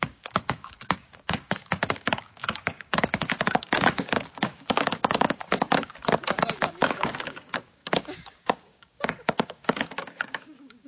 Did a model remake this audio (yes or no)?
yes